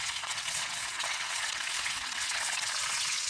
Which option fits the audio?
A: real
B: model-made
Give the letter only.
B